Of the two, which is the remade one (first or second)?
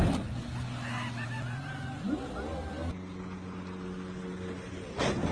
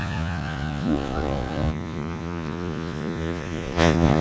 second